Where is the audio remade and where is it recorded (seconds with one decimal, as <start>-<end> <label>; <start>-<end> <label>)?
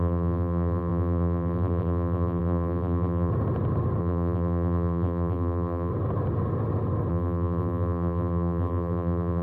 0.0-3.3 remade; 3.3-4.0 recorded; 4.0-5.9 remade; 5.9-7.1 recorded; 7.1-9.4 remade